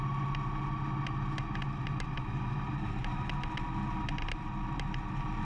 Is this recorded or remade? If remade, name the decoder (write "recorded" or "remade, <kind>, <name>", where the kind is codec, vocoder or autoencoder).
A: recorded